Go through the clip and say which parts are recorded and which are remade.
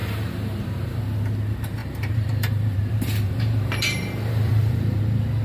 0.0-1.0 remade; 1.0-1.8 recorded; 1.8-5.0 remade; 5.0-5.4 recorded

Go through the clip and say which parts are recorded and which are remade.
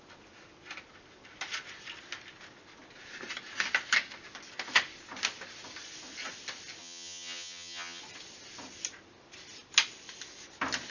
0.0-6.8 recorded; 6.8-8.0 remade; 8.0-10.9 recorded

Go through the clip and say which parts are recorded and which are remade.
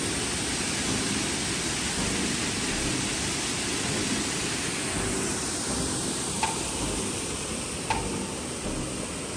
0.0-5.3 recorded; 5.3-7.5 remade; 7.5-9.4 recorded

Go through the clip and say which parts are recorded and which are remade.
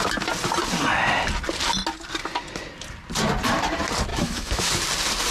0.0-4.1 recorded; 4.1-4.7 remade; 4.7-5.3 recorded